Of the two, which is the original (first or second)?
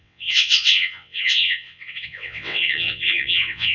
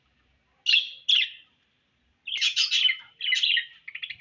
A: second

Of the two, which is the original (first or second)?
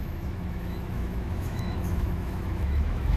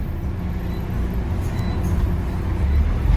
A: second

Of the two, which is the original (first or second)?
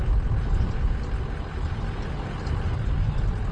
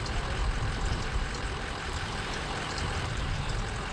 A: first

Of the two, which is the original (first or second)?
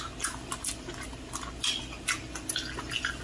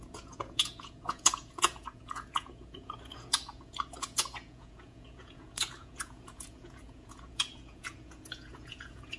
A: first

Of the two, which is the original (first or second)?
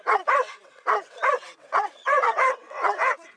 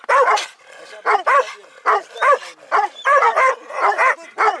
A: second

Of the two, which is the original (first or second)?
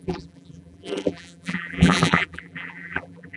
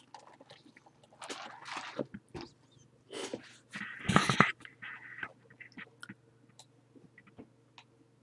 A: second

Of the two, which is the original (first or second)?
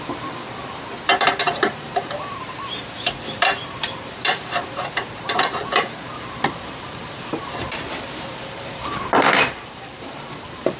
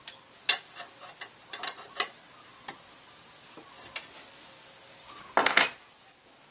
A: second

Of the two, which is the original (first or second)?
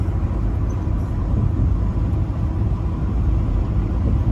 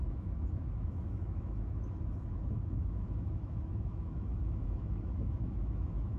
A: first